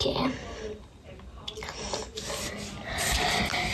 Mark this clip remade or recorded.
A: recorded